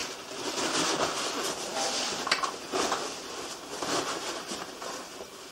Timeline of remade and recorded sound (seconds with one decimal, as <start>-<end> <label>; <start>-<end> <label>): 0.0-5.5 recorded